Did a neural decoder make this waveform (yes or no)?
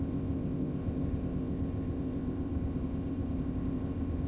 yes